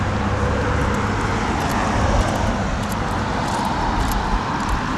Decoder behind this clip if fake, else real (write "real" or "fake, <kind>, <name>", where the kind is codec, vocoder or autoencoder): real